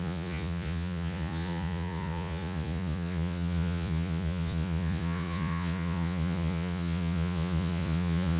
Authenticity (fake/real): fake